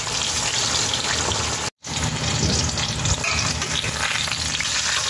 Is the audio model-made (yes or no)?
no